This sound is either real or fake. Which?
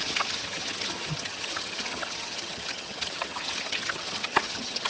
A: fake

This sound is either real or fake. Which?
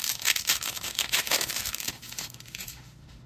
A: fake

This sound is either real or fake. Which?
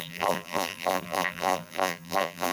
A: fake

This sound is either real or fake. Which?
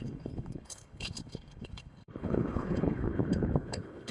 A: fake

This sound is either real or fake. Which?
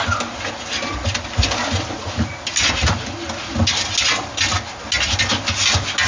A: real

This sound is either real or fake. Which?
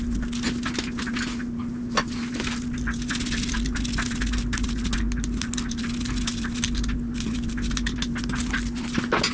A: real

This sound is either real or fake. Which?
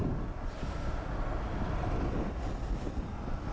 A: real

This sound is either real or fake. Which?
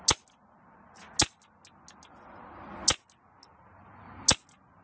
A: real